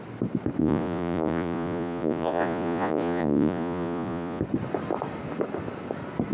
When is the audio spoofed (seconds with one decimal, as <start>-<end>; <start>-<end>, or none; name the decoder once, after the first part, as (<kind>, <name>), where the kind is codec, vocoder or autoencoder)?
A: 0.6-4.4 (vocoder, Vocos)

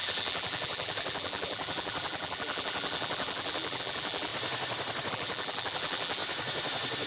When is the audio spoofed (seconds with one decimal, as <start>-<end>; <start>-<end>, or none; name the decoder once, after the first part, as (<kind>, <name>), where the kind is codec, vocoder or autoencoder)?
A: 0.0-4.3 (vocoder, BigVGAN v2); 5.1-6.2